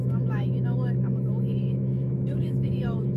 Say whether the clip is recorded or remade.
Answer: remade